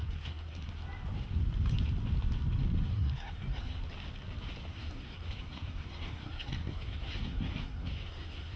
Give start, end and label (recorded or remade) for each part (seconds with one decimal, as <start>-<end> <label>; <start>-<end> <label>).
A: 0.0-0.7 remade; 0.7-2.9 recorded; 2.9-3.8 remade; 3.8-4.7 recorded; 4.7-8.6 remade